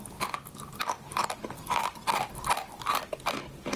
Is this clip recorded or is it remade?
recorded